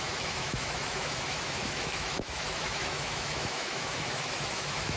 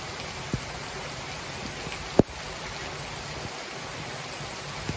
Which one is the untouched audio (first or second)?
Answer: second